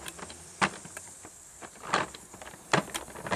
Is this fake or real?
fake